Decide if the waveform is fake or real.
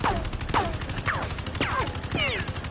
real